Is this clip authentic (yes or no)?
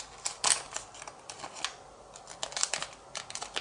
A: yes